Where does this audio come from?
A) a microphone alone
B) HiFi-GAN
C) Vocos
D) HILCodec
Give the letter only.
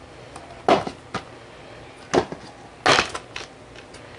A